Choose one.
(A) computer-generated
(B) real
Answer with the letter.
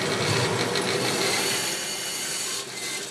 B